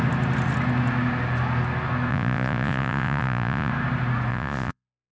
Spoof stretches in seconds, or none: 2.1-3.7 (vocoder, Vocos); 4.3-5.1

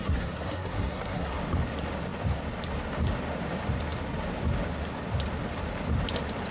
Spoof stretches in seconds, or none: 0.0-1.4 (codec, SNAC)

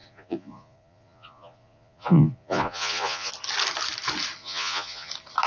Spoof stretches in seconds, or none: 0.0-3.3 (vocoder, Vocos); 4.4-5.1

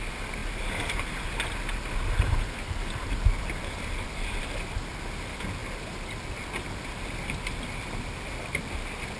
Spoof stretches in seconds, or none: none

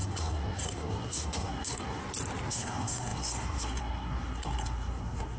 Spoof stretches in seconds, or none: 0.0-2.0 (codec, SNAC); 2.5-5.4

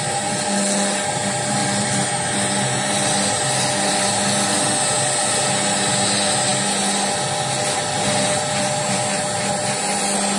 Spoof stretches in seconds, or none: none